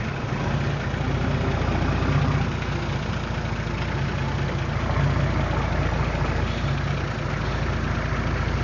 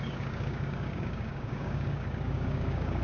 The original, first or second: first